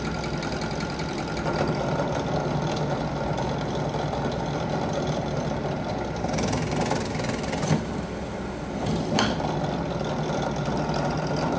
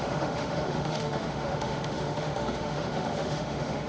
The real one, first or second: first